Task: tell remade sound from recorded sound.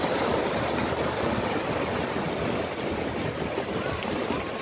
recorded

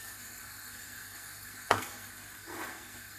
remade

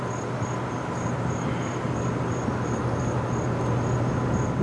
recorded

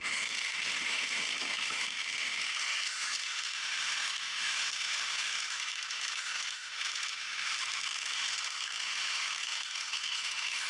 remade